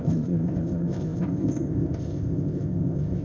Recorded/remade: remade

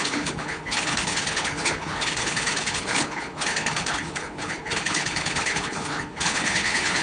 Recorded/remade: remade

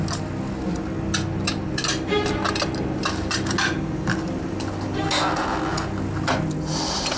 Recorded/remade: recorded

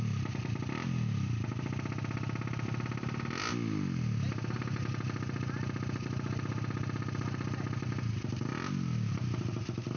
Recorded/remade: recorded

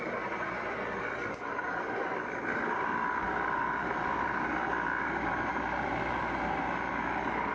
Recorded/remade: recorded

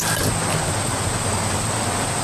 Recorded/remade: recorded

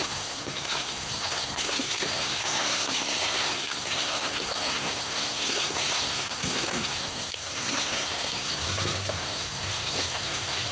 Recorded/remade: remade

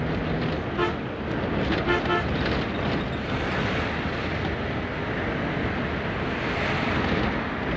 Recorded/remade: recorded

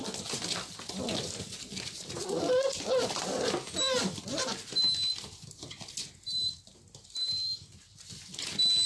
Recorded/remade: recorded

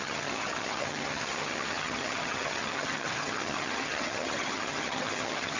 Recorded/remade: remade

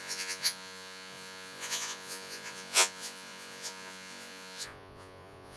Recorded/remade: remade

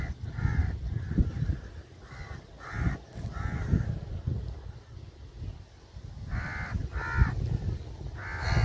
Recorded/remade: recorded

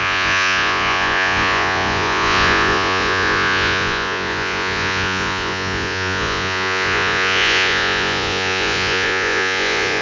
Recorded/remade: remade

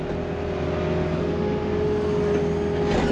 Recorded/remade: recorded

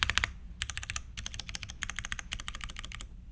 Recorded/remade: recorded